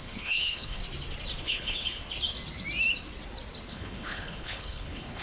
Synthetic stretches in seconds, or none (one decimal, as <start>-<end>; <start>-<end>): 0.0-0.8; 1.4-2.0; 3.7-5.2